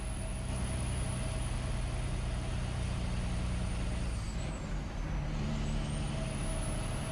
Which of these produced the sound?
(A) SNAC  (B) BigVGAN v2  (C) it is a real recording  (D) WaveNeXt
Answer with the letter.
C